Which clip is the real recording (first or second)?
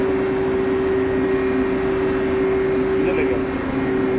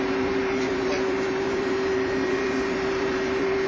first